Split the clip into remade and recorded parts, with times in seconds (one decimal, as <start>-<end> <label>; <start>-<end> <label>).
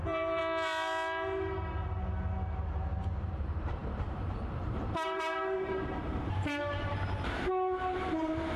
0.0-0.4 remade; 0.4-3.0 recorded; 3.0-8.6 remade